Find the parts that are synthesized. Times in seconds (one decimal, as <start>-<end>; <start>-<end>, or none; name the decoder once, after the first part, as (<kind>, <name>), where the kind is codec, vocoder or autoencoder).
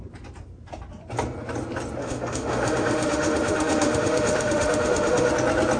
2.0-5.3 (autoencoder, DAC-VAE)